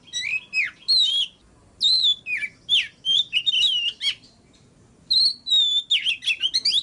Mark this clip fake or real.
real